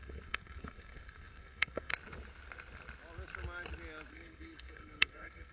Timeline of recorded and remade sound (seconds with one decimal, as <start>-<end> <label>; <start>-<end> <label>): 0.0-1.9 remade; 1.9-4.1 recorded; 4.1-5.5 remade